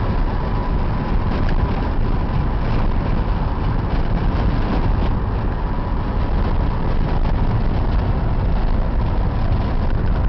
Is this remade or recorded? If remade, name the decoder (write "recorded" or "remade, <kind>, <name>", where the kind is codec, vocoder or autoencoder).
recorded